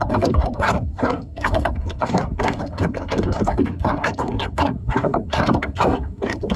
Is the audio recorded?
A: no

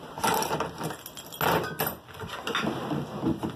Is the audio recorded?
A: yes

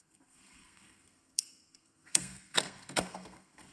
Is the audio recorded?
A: no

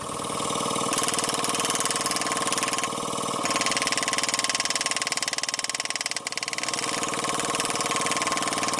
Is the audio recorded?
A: yes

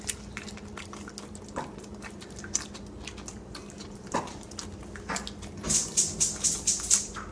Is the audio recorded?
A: yes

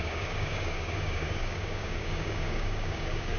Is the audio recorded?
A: no